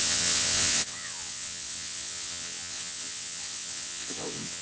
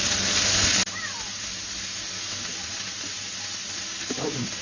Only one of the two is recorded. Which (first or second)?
second